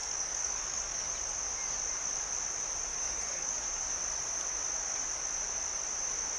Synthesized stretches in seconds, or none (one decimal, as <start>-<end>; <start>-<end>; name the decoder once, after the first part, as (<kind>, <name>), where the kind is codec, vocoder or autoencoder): 0.0-1.1 (codec, DAC); 2.9-3.8

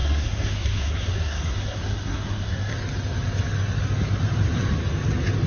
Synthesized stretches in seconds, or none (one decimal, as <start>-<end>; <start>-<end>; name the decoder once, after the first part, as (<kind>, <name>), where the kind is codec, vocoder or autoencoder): 0.0-2.7 (codec, SNAC)

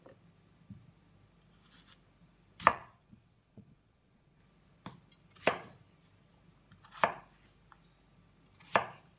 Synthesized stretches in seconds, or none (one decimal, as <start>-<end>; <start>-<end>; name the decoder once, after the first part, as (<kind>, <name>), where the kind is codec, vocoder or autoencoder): 2.7-4.4 (vocoder, Vocos)

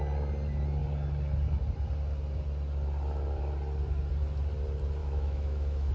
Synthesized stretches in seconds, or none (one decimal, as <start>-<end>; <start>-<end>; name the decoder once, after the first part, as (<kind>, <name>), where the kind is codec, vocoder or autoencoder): 5.0-5.9 (autoencoder, DAC-VAE)

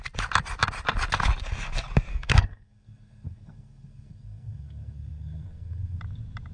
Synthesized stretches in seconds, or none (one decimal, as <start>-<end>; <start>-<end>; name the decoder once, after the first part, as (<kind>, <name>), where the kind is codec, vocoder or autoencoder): 2.1-6.0 (codec, SNAC)

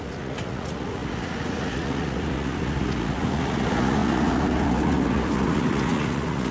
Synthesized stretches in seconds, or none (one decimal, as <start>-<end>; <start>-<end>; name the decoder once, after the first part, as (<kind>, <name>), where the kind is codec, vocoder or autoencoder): 0.0-6.5 (vocoder, Vocos)